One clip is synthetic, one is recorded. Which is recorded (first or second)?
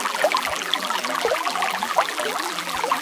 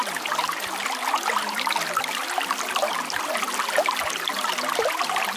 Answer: second